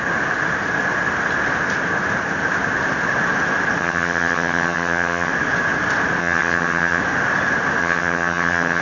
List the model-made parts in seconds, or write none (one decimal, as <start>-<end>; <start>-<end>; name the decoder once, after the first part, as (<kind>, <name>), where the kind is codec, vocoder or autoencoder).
3.8-5.3 (vocoder, HiFi-GAN); 6.2-7.0; 7.8-8.8